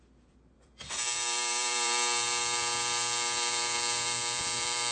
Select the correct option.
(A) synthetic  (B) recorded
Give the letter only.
A